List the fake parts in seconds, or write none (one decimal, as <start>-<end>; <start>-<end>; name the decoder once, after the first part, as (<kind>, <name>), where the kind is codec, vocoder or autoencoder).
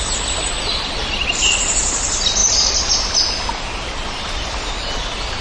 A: none